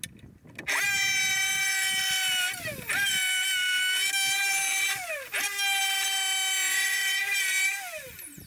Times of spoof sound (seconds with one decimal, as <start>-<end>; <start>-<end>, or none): none